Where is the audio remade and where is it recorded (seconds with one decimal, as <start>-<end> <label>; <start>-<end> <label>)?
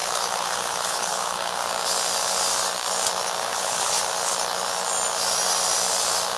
0.0-1.7 remade; 1.7-3.4 recorded; 3.4-4.0 remade; 4.0-6.4 recorded